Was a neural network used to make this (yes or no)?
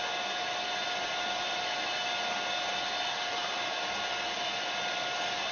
no